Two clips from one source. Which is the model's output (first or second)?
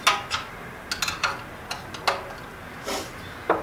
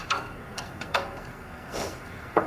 second